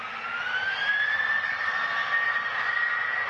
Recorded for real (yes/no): yes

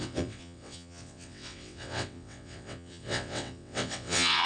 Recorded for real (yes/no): no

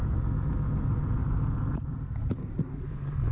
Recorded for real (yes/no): no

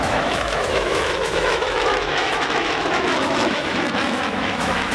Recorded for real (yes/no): no